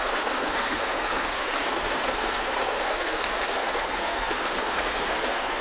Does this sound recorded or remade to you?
remade